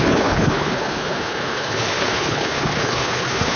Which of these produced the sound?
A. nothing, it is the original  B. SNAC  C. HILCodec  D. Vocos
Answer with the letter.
C